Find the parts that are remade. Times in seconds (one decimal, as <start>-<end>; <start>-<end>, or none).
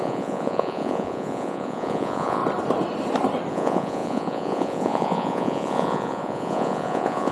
0.0-2.4; 3.5-7.3